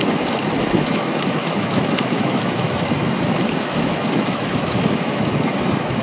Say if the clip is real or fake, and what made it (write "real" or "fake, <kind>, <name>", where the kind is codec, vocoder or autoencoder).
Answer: fake, autoencoder, DAC-VAE